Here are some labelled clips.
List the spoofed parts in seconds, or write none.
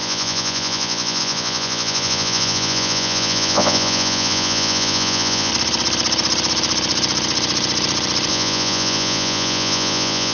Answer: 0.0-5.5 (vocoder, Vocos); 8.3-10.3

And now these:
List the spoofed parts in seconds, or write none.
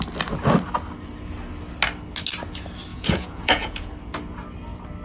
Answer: 2.9-3.9 (vocoder, Vocos)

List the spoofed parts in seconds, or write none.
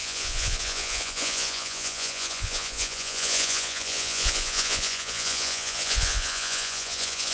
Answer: 0.0-7.3 (vocoder, Vocos)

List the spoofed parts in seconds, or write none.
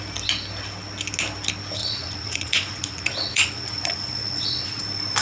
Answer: 1.8-4.8 (vocoder, Vocos)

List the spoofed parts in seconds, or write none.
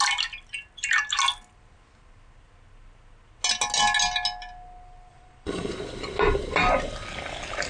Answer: 5.1-5.7 (vocoder, Vocos)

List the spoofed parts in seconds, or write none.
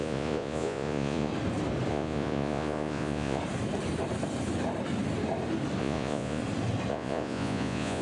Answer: 0.0-1.3 (vocoder, Vocos); 1.9-3.4; 5.8-6.4; 6.9-8.0